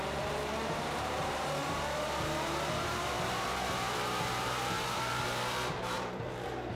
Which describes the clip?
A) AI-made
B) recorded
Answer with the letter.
A